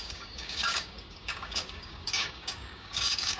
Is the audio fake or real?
fake